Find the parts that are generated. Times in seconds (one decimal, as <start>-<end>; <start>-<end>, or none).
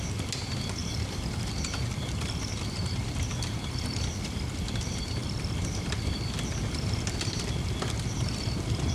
none